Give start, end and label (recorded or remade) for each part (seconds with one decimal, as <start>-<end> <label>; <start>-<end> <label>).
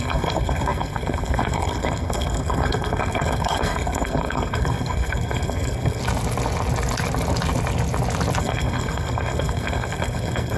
0.0-6.0 remade; 6.0-8.4 recorded; 8.4-10.6 remade